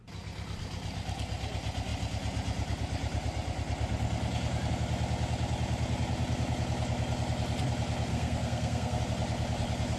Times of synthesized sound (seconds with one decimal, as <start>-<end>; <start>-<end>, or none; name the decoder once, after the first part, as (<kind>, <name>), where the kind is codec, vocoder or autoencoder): 8.1-9.0 (codec, SNAC)

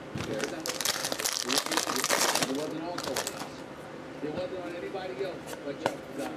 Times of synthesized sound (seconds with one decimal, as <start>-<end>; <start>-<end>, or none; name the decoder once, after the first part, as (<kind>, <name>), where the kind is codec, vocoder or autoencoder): none

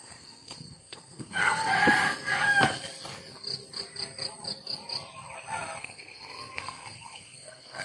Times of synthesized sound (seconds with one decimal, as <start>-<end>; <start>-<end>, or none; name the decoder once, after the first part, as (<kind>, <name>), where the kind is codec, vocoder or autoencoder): 0.0-1.7 (codec, SNAC); 5.8-7.8

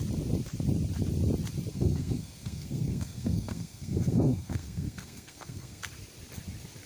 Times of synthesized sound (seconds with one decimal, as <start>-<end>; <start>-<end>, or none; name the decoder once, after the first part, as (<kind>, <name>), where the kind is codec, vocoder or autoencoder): 1.7-5.8 (codec, SNAC)

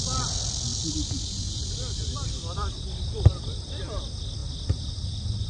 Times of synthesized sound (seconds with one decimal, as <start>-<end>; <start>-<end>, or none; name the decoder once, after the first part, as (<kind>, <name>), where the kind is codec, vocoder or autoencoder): none